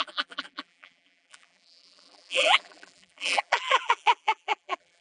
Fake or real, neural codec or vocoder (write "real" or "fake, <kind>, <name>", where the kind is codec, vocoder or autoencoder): fake, vocoder, BigVGAN v2